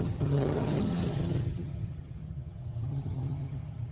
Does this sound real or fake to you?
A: fake